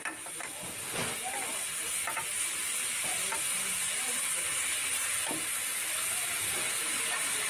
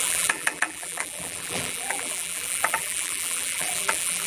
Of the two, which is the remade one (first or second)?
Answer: second